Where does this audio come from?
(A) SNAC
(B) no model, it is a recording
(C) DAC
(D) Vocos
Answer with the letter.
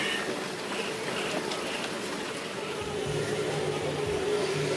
B